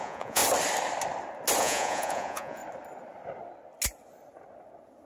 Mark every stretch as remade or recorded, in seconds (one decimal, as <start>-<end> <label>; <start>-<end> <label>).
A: 0.0-0.4 remade; 0.4-1.6 recorded; 1.6-2.6 remade; 2.6-5.1 recorded